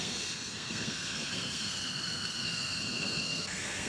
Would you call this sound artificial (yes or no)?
yes